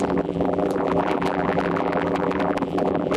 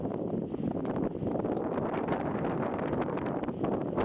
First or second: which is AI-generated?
first